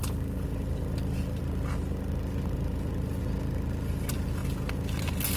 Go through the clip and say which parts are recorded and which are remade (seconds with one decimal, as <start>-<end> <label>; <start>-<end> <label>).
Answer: 0.0-1.4 remade; 1.4-5.4 recorded